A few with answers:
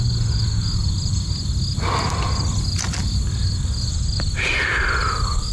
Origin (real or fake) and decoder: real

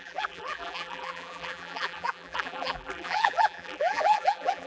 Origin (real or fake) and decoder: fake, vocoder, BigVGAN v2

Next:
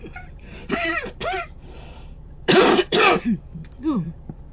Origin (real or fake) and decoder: fake, vocoder, BigVGAN v2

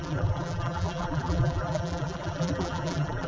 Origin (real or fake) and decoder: fake, vocoder, BigVGAN v2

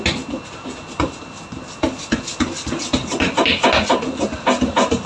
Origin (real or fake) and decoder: real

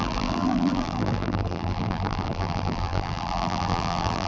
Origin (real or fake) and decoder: fake, vocoder, BigVGAN v2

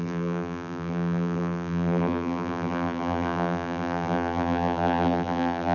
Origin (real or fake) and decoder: fake, vocoder, BigVGAN v2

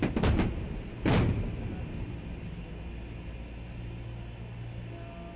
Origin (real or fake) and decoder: real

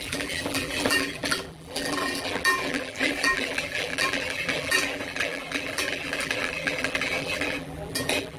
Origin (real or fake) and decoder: fake, vocoder, BigVGAN v2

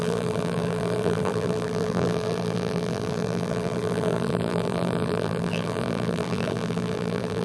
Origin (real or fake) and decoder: fake, vocoder, BigVGAN v2